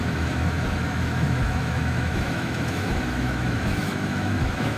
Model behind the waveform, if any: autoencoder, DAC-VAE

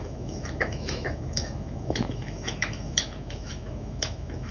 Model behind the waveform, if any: autoencoder, DAC-VAE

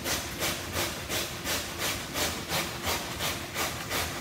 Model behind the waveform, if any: none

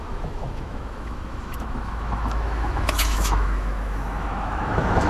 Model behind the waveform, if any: autoencoder, DAC-VAE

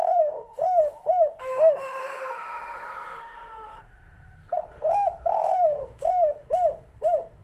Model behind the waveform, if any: autoencoder, DAC-VAE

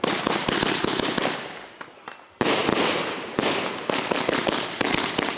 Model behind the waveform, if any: none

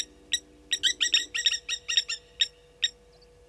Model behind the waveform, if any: none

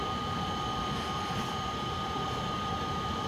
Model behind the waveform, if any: none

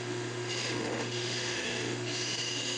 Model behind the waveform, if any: autoencoder, DAC-VAE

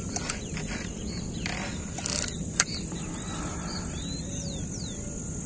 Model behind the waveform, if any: none